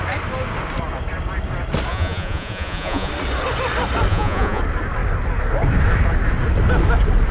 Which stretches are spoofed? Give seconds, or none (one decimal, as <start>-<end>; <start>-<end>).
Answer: 1.9-3.1; 4.1-4.6